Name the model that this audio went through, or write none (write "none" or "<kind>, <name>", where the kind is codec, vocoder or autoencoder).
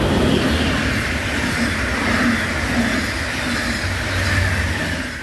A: none